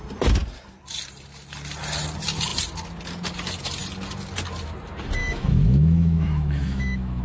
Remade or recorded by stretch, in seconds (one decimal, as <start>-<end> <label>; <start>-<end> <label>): 0.0-5.2 recorded; 5.2-7.2 remade